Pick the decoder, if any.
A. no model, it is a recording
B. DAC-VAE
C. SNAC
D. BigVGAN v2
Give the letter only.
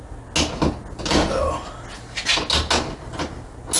A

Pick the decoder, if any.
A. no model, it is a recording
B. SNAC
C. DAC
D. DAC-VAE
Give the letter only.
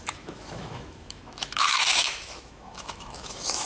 D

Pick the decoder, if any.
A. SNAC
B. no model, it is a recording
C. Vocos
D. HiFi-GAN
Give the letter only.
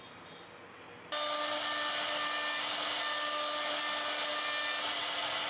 B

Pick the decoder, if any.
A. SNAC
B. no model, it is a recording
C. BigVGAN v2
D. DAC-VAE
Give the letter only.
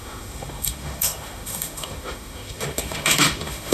D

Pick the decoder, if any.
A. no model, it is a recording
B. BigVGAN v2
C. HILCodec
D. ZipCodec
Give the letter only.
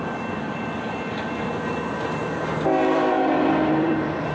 B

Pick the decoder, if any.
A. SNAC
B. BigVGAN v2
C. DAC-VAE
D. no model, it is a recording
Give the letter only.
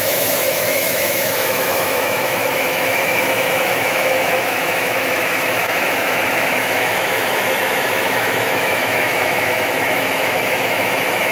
C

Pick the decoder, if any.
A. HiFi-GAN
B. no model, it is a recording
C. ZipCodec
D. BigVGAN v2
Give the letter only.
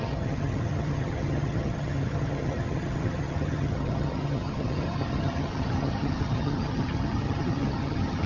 A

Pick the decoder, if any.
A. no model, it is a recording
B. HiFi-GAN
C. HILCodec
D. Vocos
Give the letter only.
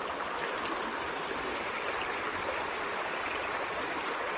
A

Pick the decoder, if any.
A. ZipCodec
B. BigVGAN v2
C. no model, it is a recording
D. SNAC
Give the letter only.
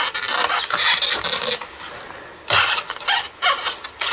C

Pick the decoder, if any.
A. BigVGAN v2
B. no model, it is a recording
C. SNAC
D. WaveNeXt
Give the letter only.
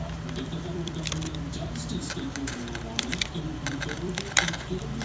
A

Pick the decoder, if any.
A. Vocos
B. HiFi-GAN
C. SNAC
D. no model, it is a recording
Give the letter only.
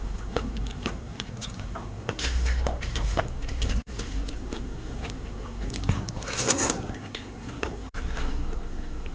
C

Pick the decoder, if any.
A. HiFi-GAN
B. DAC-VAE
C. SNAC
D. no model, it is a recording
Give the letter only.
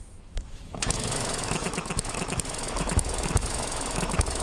B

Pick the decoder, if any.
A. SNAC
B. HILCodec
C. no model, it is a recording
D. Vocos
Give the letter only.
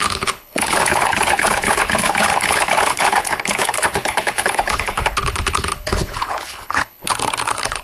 B